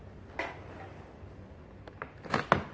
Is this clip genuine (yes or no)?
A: yes